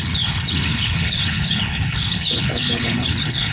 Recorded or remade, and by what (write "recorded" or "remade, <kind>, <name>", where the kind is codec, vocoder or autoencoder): remade, codec, HILCodec